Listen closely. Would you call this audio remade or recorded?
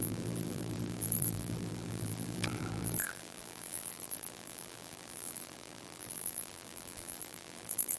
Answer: remade